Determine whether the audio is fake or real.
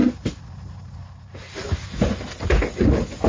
real